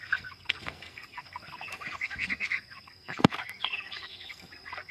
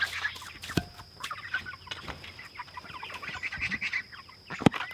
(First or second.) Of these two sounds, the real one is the second